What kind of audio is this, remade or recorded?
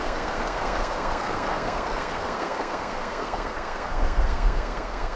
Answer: remade